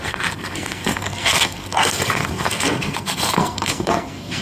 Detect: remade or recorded remade